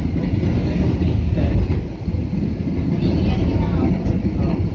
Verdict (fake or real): real